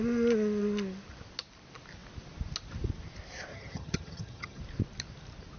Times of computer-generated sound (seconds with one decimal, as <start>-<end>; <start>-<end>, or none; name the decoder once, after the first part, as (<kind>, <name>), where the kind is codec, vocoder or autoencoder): 3.5-4.6 (vocoder, HiFi-GAN)